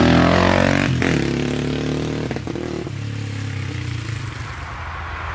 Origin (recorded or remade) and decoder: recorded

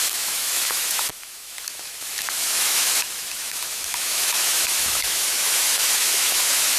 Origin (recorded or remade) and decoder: remade, autoencoder, DAC-VAE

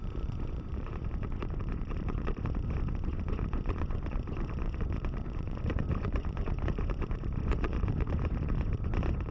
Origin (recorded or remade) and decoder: remade, vocoder, Vocos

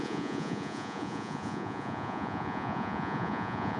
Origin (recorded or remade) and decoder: remade, vocoder, Vocos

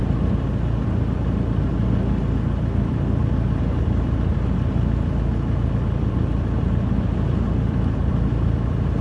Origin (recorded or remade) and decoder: recorded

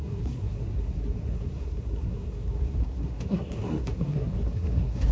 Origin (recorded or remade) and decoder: remade, codec, SNAC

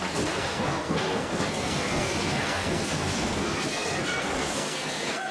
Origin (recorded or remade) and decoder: remade, codec, SNAC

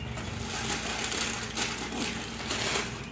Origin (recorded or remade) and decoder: recorded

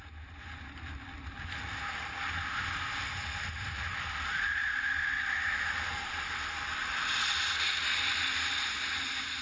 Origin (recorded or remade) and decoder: recorded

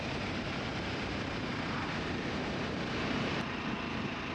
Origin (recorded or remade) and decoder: remade, vocoder, BigVGAN v2